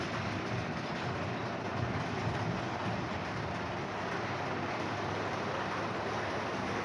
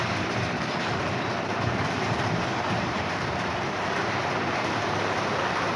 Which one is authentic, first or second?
first